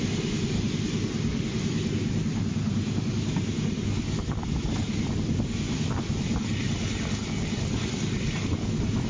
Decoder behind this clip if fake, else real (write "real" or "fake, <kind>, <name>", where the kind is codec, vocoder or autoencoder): real